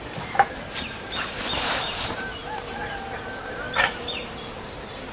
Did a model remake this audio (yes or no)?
yes